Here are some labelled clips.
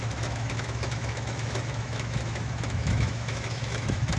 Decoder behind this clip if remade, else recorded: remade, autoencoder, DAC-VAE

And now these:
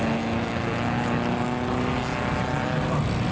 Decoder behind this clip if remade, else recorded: recorded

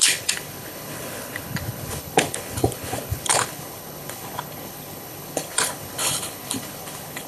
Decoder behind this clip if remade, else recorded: remade, codec, HILCodec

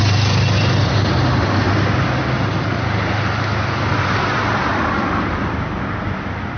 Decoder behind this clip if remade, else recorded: recorded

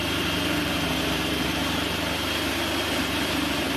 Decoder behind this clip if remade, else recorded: remade, vocoder, BigVGAN v2